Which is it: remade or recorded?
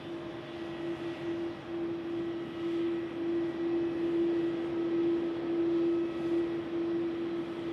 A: recorded